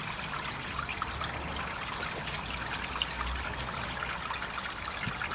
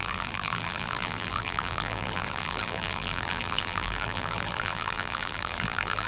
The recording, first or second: first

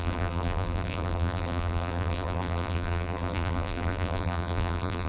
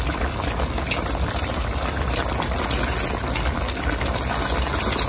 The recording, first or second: second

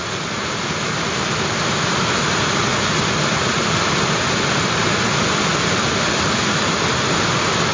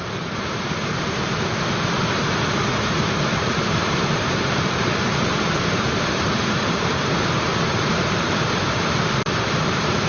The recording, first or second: first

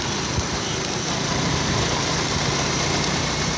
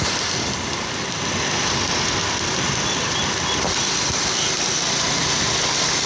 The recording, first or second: second